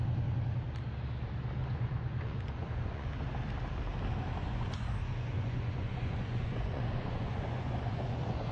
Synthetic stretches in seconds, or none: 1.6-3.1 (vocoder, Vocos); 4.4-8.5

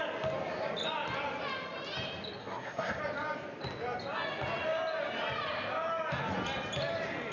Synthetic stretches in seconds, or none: 2.4-3.0 (codec, SNAC)

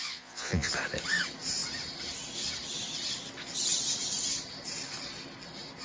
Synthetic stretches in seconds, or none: 0.0-0.7 (vocoder, Vocos)

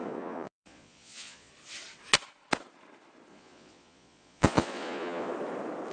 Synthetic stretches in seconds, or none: 0.0-1.5 (vocoder, Vocos); 3.3-5.3